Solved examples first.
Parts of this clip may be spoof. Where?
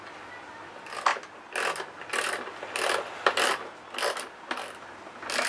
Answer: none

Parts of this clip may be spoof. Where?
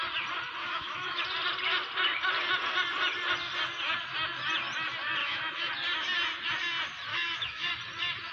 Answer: 0.6-1.2 (autoencoder, DAC-VAE); 5.2-5.7; 7.1-7.7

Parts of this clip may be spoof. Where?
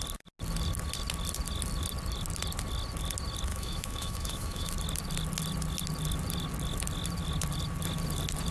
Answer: 3.5-4.7 (autoencoder, DAC-VAE)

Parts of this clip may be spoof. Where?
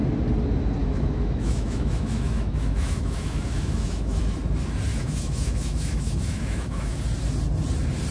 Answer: 0.8-4.2 (autoencoder, DAC-VAE); 4.9-7.0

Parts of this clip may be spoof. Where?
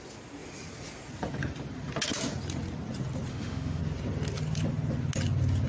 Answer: 3.3-3.8 (autoencoder, DAC-VAE)